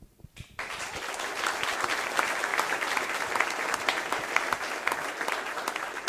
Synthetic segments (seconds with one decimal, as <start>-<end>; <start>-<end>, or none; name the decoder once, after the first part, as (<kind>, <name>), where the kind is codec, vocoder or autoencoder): none